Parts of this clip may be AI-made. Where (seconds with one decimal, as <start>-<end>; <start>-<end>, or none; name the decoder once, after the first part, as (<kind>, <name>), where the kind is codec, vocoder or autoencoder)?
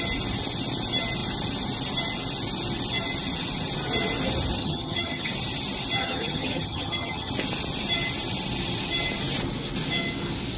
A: 4.6-5.3 (vocoder, HiFi-GAN); 6.0-7.3